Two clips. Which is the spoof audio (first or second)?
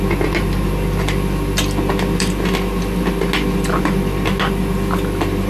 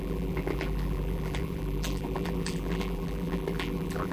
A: second